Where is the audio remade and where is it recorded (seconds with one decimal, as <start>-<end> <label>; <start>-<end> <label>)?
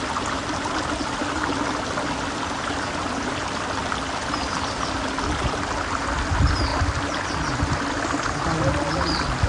0.0-9.5 recorded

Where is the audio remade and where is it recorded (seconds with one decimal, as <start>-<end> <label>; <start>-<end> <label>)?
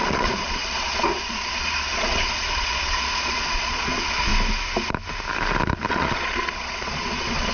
0.0-4.3 remade; 4.3-5.9 recorded; 5.9-7.5 remade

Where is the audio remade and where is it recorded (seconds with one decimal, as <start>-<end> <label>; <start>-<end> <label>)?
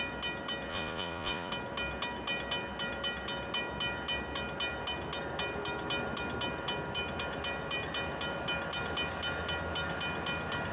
0.0-0.7 recorded; 0.7-1.5 remade; 1.5-10.7 recorded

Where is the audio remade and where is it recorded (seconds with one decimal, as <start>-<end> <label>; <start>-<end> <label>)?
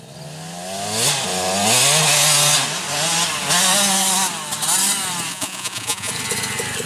0.0-5.3 recorded; 5.3-6.1 remade; 6.1-6.9 recorded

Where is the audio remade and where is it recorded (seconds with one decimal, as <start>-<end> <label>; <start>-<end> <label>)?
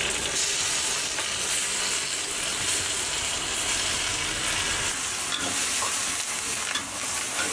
0.0-7.5 recorded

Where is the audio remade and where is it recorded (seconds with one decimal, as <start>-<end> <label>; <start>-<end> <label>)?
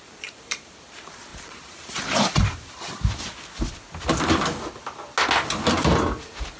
0.0-6.6 recorded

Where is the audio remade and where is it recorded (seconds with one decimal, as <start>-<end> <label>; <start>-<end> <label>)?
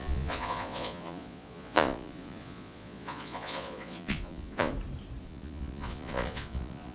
0.0-4.7 remade; 4.7-5.2 recorded; 5.2-6.9 remade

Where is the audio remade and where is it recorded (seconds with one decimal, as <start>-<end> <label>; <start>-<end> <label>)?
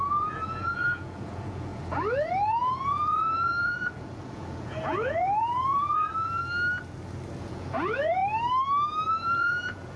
0.0-6.4 remade; 6.4-7.4 recorded; 7.4-8.2 remade; 8.2-9.1 recorded; 9.1-10.0 remade